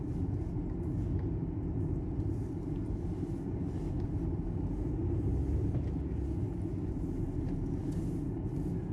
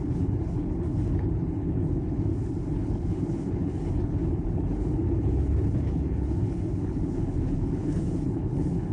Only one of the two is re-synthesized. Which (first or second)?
second